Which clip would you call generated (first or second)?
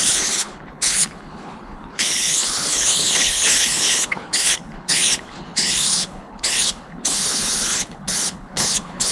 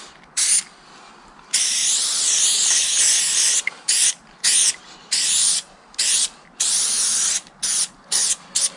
first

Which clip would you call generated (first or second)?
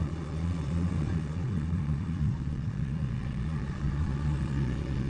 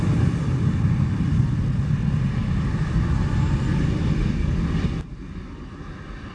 first